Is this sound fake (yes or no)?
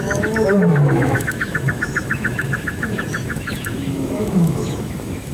yes